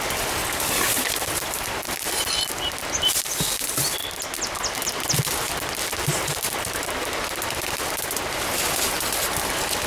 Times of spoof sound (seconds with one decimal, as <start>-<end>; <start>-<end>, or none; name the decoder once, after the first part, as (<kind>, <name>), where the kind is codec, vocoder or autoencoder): none